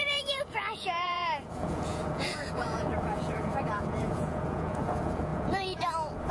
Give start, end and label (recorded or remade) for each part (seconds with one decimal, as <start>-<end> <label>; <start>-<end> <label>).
0.0-6.3 remade